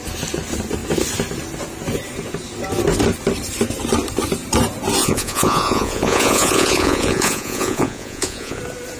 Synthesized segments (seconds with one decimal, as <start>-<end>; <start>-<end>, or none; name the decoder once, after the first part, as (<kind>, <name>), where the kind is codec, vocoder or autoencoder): 5.0-8.6 (vocoder, Vocos)